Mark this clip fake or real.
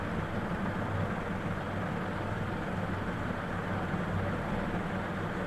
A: real